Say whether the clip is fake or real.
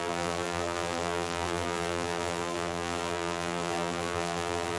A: fake